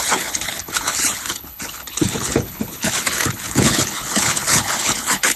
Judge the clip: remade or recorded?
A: remade